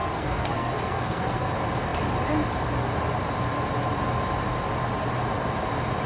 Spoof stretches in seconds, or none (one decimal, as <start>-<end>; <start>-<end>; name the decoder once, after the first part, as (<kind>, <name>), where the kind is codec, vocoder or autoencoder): 0.0-1.5 (codec, SNAC)